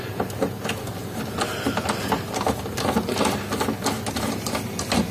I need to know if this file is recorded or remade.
recorded